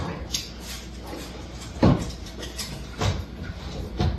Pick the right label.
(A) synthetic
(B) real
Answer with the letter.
B